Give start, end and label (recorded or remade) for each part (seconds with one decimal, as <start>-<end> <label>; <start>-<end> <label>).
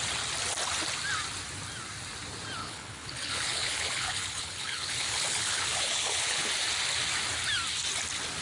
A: 0.0-2.6 recorded; 2.6-6.5 remade; 6.5-8.4 recorded